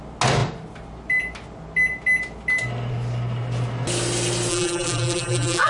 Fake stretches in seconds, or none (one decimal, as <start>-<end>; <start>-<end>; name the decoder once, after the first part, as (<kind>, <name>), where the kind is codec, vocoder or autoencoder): 4.5-5.7 (vocoder, BigVGAN v2)